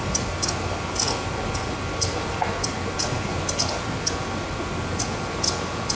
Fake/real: real